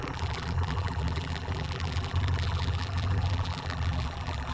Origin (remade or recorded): remade